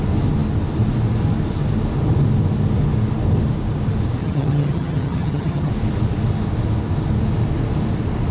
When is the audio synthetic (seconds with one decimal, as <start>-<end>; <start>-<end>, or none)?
4.2-5.7